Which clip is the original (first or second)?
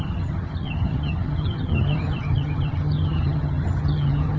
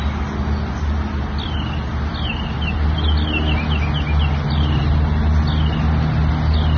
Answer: second